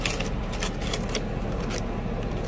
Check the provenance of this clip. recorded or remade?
recorded